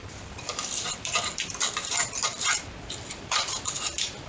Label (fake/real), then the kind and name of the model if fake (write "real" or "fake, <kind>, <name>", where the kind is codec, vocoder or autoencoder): fake, vocoder, BigVGAN v2